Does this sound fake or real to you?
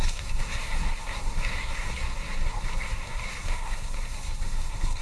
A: fake